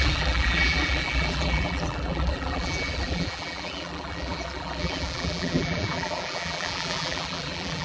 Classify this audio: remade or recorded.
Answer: remade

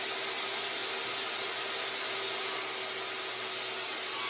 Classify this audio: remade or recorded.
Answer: recorded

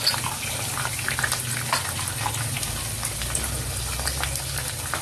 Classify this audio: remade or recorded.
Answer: recorded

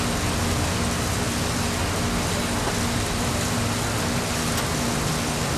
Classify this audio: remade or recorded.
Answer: recorded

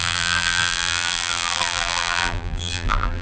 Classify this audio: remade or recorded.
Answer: remade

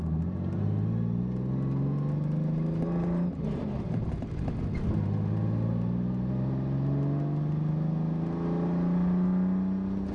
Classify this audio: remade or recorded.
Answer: recorded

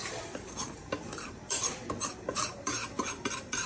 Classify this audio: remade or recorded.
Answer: remade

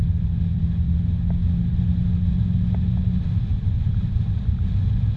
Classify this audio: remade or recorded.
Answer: recorded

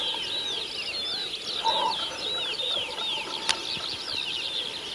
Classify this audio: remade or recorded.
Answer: recorded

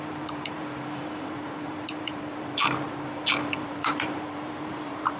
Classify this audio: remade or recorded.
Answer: remade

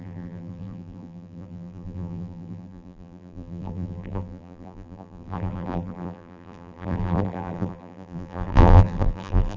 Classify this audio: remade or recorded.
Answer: remade